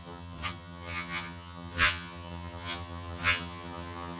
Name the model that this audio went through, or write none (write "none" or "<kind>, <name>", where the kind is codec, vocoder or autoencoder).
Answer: vocoder, HiFi-GAN